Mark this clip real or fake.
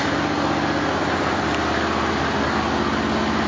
real